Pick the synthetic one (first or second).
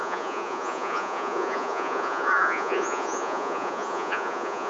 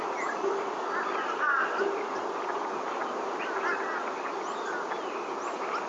first